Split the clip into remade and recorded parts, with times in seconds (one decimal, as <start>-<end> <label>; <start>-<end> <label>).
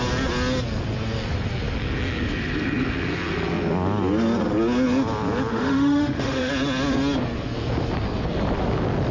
0.0-5.5 recorded; 5.5-6.5 remade; 6.5-9.1 recorded